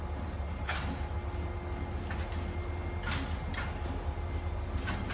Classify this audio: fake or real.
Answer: real